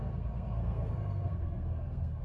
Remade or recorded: remade